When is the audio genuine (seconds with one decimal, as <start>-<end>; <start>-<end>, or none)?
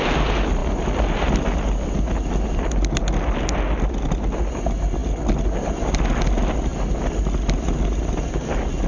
0.0-8.9